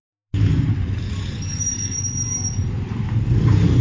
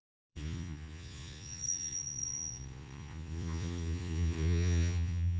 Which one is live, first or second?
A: first